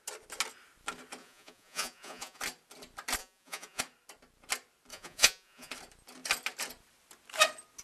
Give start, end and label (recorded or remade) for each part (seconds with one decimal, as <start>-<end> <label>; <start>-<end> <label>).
0.0-1.2 recorded; 1.2-2.4 remade; 2.4-3.2 recorded; 3.2-3.8 remade; 3.8-4.9 recorded; 4.9-5.7 remade; 5.7-7.8 recorded